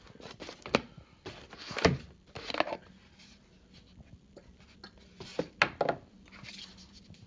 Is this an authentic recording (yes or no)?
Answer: yes